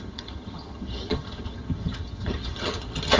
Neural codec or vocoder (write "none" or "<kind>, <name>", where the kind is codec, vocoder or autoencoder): vocoder, HiFi-GAN